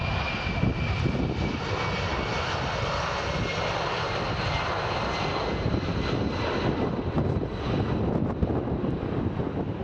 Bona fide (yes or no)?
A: yes